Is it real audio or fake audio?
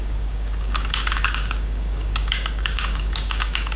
fake